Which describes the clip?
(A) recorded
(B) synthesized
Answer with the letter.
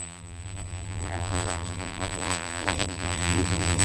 B